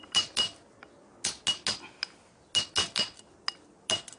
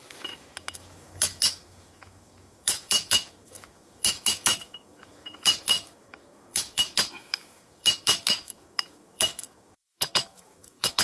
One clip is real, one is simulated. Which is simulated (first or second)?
second